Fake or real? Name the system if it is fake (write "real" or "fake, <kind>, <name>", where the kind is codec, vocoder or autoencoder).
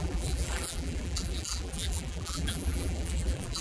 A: fake, vocoder, BigVGAN v2